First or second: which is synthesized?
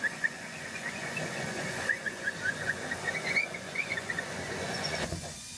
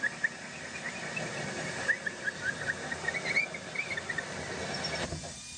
first